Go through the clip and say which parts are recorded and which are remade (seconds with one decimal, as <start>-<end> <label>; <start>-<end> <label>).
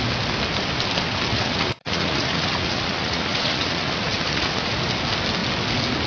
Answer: 0.0-1.3 recorded; 1.3-4.7 remade; 4.7-6.1 recorded